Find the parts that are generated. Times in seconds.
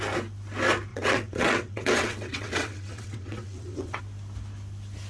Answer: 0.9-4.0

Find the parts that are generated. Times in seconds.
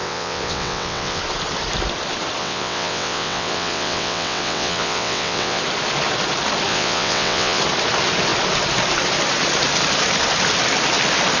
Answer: 0.0-1.2; 2.4-5.6; 6.7-7.6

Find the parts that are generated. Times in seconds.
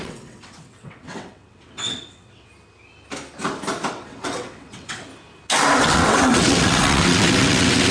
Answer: 0.0-2.5; 3.9-5.1; 5.8-7.9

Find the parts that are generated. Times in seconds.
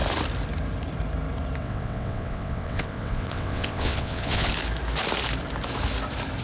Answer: 1.6-4.5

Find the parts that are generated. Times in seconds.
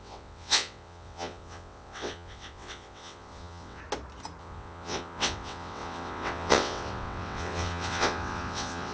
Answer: 0.0-3.8; 4.4-8.9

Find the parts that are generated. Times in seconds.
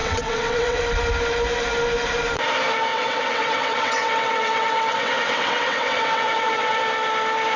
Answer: 0.0-0.8; 2.9-6.8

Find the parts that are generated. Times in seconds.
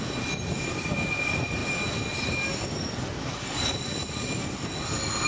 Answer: none